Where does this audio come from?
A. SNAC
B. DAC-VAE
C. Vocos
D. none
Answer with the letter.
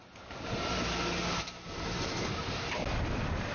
D